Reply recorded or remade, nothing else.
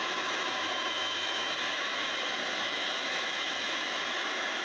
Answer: remade